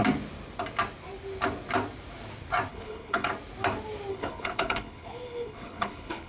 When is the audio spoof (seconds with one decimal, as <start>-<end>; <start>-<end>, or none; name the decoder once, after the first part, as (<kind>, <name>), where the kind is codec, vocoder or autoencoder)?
2.7-3.3 (codec, HILCodec); 4.1-6.3